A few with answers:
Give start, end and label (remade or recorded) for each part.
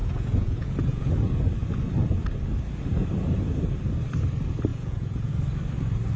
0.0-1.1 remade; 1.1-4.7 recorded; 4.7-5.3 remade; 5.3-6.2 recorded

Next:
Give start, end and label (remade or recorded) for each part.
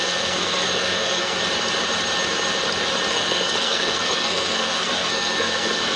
0.0-1.4 remade; 1.4-3.1 recorded; 3.1-6.0 remade